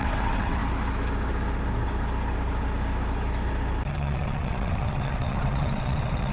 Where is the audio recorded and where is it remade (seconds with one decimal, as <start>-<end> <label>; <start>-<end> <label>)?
0.0-0.6 remade; 0.6-3.9 recorded; 3.9-6.3 remade

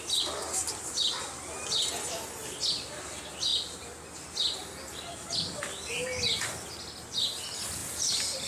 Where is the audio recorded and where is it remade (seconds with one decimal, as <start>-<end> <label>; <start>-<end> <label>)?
0.0-8.5 recorded

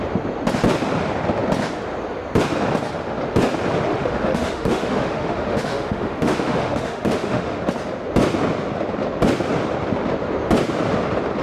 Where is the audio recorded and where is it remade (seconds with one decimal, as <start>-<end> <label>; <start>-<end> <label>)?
0.0-3.9 recorded; 3.9-7.6 remade; 7.6-11.4 recorded

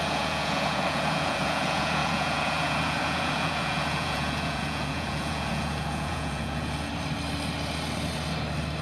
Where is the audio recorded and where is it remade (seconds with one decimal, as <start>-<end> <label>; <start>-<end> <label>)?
0.0-6.9 remade; 6.9-8.8 recorded

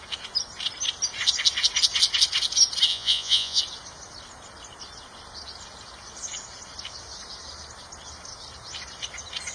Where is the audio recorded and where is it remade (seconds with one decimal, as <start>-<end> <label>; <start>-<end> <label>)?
0.0-2.9 recorded; 2.9-3.6 remade; 3.6-9.5 recorded

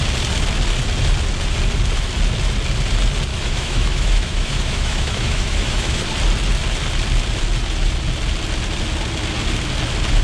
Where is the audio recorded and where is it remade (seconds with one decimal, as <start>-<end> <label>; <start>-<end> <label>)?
0.0-3.3 recorded; 3.3-6.0 remade; 6.0-10.2 recorded

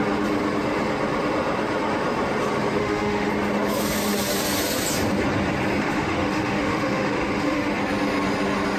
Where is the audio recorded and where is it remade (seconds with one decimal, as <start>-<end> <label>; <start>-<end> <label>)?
0.0-2.8 recorded; 2.8-3.3 remade; 3.3-5.8 recorded; 5.8-7.7 remade; 7.7-8.8 recorded